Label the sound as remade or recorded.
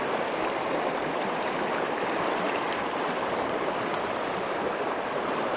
remade